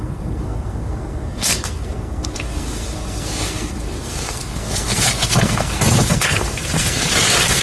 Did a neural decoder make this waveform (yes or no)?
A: yes